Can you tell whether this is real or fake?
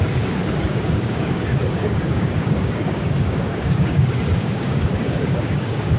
fake